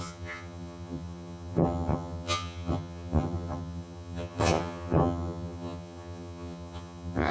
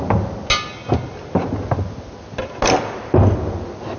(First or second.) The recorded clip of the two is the second